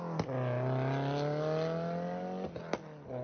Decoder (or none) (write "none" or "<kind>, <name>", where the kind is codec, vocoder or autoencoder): none